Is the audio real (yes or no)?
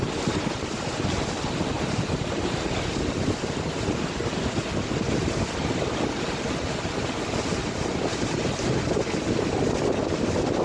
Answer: yes